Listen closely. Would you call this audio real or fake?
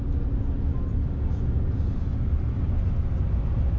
real